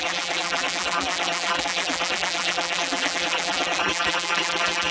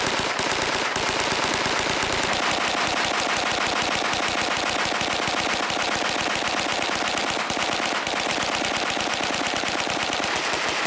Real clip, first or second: second